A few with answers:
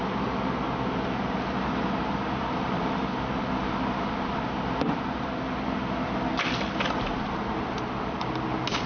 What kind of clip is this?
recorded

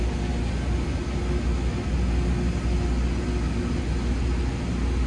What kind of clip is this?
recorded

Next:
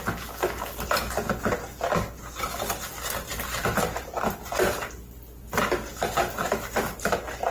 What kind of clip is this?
recorded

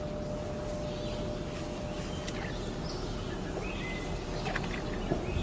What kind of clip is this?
recorded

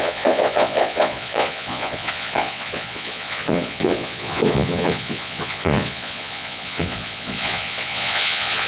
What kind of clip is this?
remade